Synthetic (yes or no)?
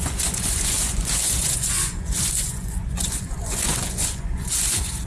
yes